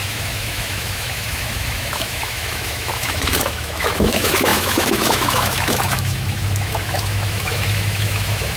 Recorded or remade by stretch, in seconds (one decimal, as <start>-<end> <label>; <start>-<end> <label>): 0.0-8.6 remade